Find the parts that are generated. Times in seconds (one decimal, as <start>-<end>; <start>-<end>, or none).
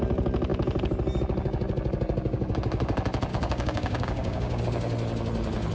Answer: 3.3-4.6